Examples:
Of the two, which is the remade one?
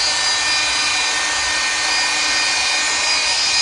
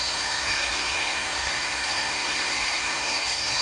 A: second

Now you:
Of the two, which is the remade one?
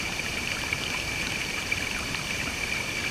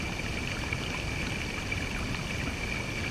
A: first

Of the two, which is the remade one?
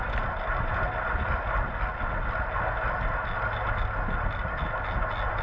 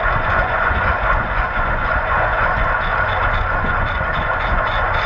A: second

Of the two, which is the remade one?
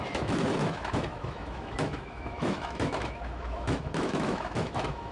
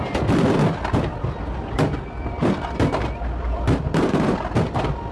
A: first